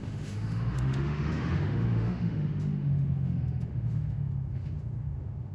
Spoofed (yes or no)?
yes